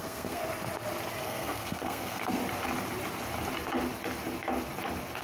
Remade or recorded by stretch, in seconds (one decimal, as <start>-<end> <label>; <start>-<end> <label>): 0.0-0.4 remade; 0.4-1.2 recorded; 1.2-2.4 remade; 2.4-5.2 recorded